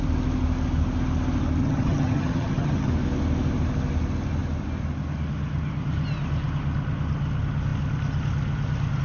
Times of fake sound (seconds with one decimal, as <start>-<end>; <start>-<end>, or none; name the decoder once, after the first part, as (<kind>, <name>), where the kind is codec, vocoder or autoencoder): 1.6-2.9 (vocoder, HiFi-GAN)